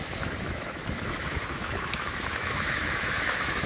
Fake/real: fake